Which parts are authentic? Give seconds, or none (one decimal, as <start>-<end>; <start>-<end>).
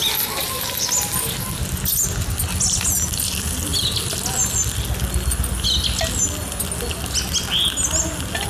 0.0-8.5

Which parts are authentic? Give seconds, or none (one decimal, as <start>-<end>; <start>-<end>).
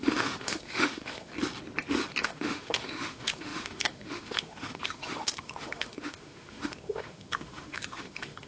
1.3-2.2